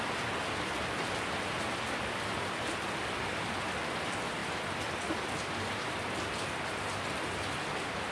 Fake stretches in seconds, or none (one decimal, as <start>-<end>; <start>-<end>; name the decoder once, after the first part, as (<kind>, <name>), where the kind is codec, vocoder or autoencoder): none